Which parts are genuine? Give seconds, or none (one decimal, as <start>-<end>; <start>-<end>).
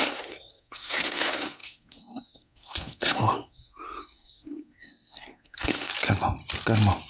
5.9-7.1